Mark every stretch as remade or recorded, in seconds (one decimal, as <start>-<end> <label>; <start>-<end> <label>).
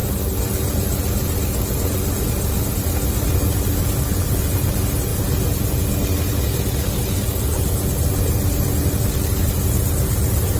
0.0-10.6 recorded